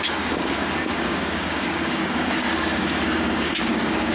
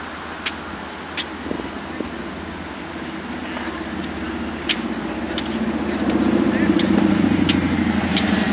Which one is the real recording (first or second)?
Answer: second